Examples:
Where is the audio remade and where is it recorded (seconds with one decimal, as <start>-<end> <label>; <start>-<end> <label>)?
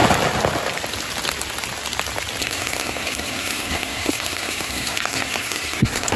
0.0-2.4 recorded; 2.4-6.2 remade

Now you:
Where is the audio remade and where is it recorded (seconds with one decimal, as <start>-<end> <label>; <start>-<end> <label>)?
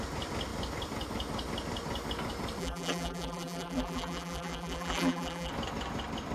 0.0-2.6 recorded; 2.6-5.5 remade; 5.5-6.3 recorded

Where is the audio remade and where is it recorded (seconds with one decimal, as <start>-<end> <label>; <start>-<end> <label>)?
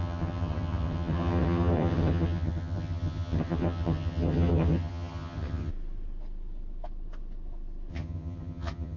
0.0-5.7 remade; 5.7-7.9 recorded; 7.9-9.0 remade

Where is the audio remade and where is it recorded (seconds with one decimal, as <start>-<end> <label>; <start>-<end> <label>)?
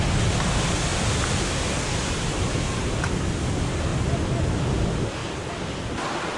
0.0-0.9 recorded; 0.9-2.5 remade; 2.5-5.2 recorded; 5.2-5.8 remade; 5.8-6.4 recorded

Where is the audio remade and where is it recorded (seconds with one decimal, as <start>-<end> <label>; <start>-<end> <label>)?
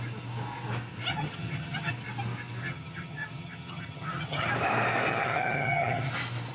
0.0-1.1 recorded; 1.1-1.9 remade; 1.9-2.6 recorded; 2.6-4.5 remade; 4.5-5.1 recorded; 5.1-6.1 remade; 6.1-6.5 recorded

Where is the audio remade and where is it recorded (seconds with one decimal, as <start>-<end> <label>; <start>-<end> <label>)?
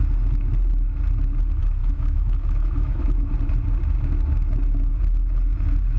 0.0-1.8 recorded; 1.8-3.3 remade; 3.3-6.0 recorded